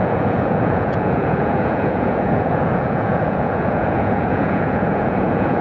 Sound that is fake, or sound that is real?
fake